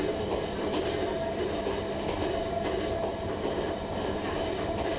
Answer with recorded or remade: recorded